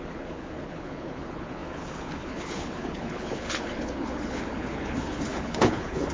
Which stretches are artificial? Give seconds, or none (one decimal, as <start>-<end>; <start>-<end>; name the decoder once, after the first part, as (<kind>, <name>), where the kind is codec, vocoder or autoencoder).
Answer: 0.0-6.1 (codec, HILCodec)

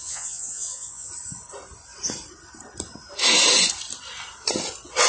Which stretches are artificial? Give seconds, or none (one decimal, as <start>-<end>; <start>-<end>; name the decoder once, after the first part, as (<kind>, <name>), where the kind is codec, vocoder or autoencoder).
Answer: 0.0-1.1 (vocoder, Vocos)

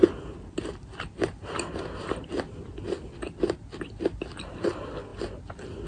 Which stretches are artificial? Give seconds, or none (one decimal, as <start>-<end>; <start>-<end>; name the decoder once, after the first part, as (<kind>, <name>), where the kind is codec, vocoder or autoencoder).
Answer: none

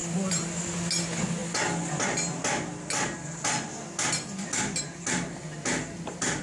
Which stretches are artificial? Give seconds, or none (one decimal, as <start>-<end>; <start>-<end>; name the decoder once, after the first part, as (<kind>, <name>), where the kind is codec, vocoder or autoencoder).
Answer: none

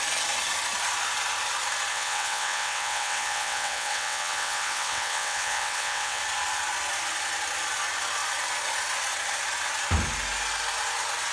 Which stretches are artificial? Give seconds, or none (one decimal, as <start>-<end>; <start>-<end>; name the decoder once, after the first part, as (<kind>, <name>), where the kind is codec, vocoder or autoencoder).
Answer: 1.9-6.2 (vocoder, WaveNeXt)

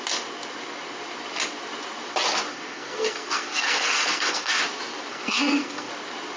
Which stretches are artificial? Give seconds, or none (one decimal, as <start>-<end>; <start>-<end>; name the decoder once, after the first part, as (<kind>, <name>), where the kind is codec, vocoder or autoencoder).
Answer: 2.5-4.5 (codec, SNAC); 5.1-5.9

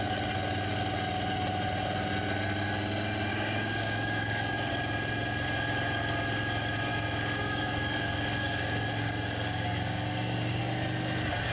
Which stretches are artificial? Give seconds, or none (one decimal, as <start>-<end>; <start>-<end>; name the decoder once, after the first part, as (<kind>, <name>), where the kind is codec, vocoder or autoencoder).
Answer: 3.3-4.7 (codec, DAC); 6.9-10.6

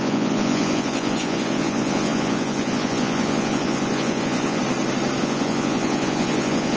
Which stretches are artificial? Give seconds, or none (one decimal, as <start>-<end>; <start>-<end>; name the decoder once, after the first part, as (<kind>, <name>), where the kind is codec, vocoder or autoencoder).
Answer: 0.0-4.6 (vocoder, Vocos); 5.2-6.8